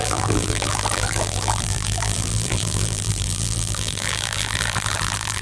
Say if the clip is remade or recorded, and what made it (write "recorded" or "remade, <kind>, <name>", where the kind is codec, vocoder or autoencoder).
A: remade, vocoder, BigVGAN v2